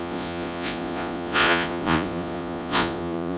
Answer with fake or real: fake